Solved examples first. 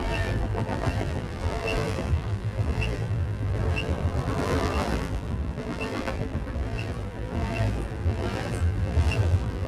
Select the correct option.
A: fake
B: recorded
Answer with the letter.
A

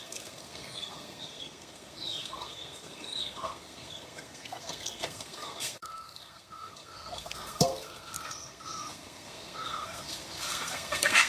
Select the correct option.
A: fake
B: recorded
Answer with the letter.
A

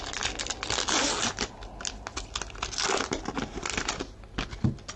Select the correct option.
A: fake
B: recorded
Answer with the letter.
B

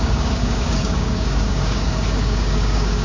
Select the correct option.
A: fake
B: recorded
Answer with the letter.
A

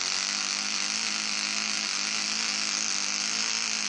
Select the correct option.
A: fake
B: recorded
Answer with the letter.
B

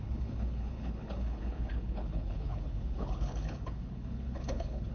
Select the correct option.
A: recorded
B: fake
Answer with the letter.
B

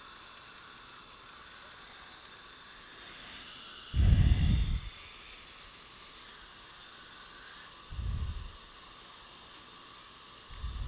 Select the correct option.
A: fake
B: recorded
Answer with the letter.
B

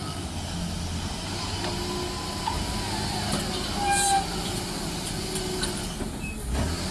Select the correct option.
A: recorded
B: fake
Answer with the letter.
A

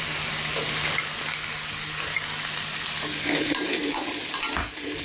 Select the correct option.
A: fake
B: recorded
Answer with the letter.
B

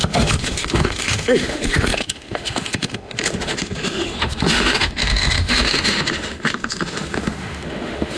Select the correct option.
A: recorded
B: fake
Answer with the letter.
B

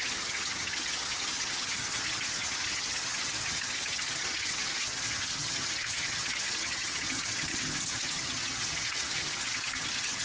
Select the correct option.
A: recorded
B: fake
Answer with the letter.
B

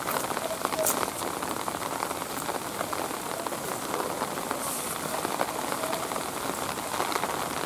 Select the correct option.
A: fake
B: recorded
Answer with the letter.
B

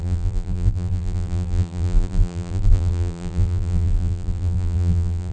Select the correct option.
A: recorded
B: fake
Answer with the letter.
B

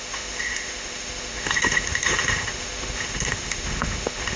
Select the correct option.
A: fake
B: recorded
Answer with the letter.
A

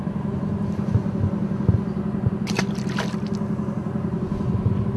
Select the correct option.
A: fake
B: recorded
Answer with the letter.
B